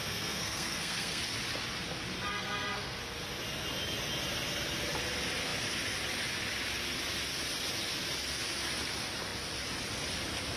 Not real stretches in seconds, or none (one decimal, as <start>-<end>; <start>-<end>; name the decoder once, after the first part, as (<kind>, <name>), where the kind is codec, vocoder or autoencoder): 0.0-1.2 (codec, SNAC); 2.3-3.0

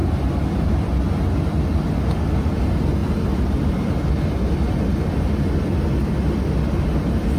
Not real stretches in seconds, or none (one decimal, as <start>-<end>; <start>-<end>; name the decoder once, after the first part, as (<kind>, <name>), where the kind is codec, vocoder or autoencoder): none

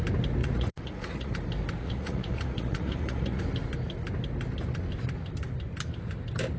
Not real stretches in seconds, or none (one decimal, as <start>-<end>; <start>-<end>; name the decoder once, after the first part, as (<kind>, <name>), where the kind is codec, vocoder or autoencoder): 0.4-1.3 (vocoder, Vocos); 1.8-3.4